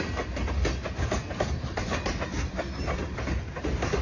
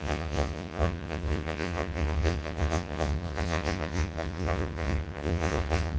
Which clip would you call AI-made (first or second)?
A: second